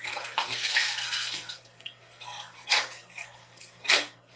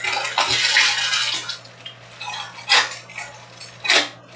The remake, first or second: first